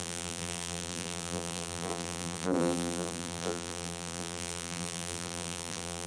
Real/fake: fake